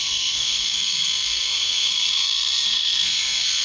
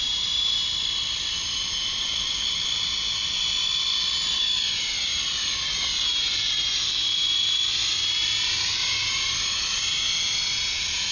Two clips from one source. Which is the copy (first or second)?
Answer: first